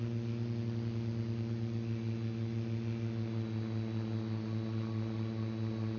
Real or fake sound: real